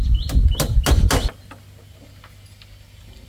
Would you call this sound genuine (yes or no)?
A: yes